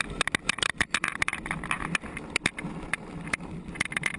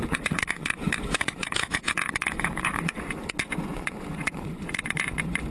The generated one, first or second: second